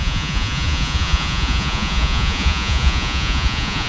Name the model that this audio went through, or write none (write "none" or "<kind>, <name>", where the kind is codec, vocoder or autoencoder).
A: vocoder, Vocos